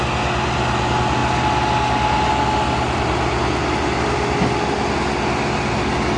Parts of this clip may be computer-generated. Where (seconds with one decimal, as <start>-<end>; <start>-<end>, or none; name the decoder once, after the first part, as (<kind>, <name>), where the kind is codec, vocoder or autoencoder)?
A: none